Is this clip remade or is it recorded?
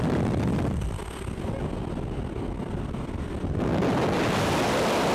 recorded